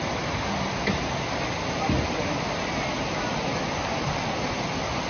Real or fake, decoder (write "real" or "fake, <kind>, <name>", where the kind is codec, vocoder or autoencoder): real